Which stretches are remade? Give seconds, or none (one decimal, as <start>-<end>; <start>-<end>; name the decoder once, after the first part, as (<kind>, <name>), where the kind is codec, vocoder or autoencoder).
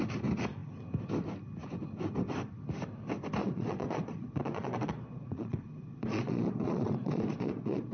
3.4-7.9 (vocoder, Vocos)